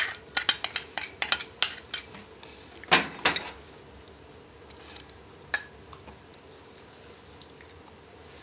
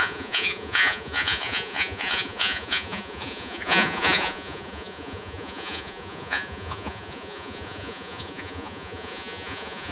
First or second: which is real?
first